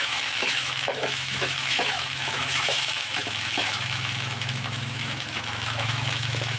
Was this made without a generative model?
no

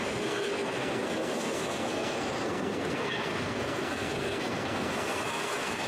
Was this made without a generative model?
no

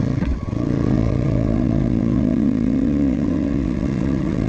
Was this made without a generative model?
no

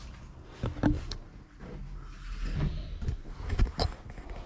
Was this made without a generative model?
yes